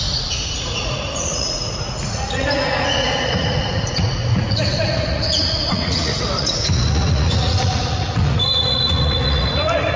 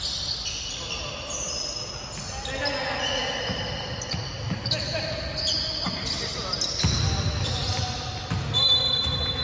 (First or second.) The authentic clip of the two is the second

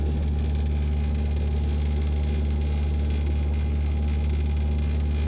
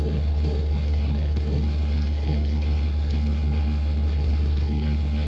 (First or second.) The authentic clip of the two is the first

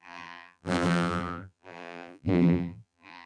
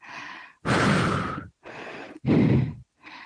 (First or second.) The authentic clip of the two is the second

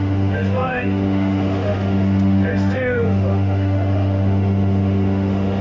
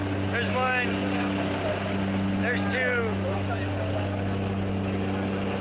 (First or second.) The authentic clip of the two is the second